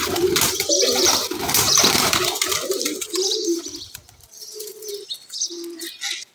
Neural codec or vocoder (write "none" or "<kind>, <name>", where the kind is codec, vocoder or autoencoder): vocoder, BigVGAN v2